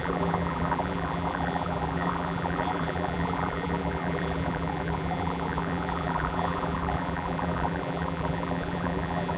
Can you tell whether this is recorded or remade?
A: remade